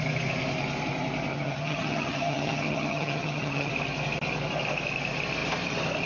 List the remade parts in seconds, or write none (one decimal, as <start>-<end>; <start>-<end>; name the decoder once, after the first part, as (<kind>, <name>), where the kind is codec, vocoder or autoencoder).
1.3-3.7 (vocoder, HiFi-GAN)